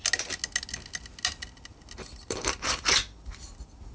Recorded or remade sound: recorded